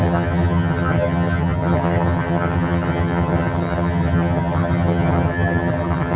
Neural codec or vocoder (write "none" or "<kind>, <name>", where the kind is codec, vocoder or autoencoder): vocoder, HiFi-GAN